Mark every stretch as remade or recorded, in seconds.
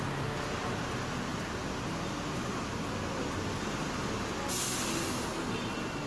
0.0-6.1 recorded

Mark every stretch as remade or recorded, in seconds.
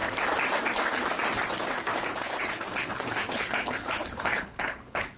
0.0-2.4 recorded; 2.4-5.2 remade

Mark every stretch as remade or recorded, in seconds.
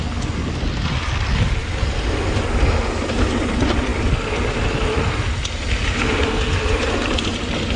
0.0-7.8 recorded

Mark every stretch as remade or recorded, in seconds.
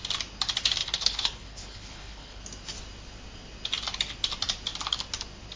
0.0-0.8 recorded; 0.8-2.4 remade; 2.4-5.6 recorded